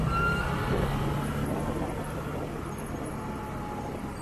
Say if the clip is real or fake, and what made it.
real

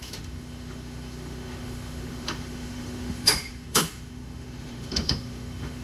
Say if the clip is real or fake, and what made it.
fake, autoencoder, DAC-VAE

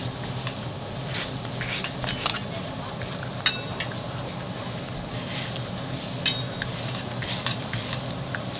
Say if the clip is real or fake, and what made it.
real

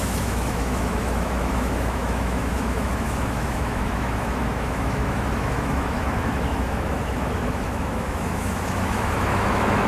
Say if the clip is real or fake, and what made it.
fake, autoencoder, DAC-VAE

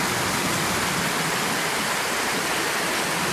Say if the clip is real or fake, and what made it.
real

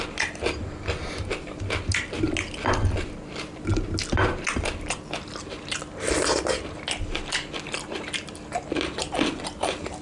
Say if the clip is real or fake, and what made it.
real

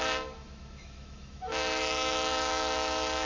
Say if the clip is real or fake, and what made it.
fake, autoencoder, DAC-VAE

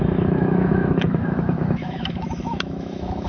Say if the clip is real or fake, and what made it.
fake, autoencoder, DAC-VAE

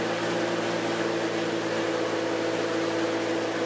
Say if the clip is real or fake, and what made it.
real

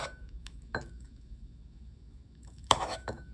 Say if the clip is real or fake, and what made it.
fake, autoencoder, DAC-VAE